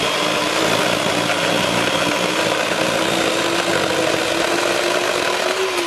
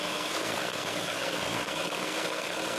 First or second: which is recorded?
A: first